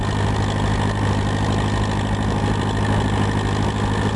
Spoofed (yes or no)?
no